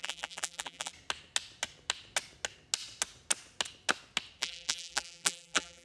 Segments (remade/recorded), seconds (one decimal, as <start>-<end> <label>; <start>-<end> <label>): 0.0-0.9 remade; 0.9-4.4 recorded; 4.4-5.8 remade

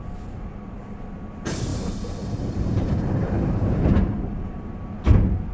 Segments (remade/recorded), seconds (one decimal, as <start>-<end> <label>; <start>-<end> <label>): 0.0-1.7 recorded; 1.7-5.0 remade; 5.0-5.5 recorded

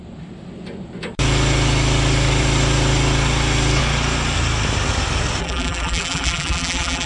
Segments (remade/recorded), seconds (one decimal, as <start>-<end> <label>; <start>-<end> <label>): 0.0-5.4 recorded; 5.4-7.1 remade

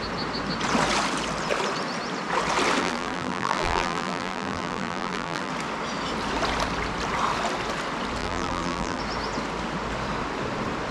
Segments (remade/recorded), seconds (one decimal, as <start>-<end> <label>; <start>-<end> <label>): 0.0-2.8 recorded; 2.8-5.5 remade; 5.5-8.2 recorded; 8.2-9.0 remade; 9.0-10.9 recorded

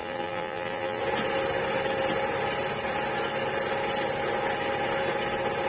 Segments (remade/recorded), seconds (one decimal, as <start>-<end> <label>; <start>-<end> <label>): 0.0-1.0 remade; 1.0-5.7 recorded